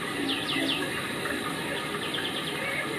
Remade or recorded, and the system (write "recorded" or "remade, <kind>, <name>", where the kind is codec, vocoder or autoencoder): recorded